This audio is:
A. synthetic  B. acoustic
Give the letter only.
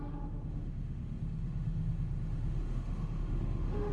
A